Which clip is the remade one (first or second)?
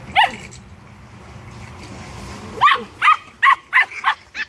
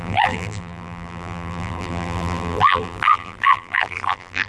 second